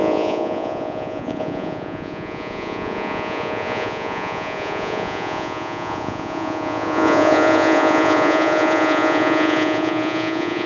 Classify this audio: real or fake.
fake